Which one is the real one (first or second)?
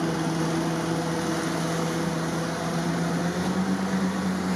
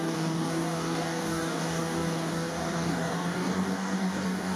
first